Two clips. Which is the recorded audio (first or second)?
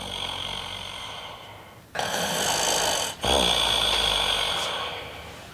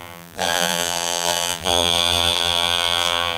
first